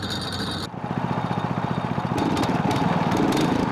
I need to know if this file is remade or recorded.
recorded